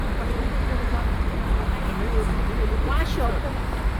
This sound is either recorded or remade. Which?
remade